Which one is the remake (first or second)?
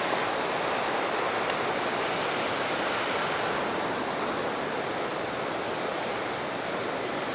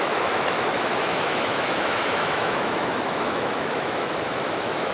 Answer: second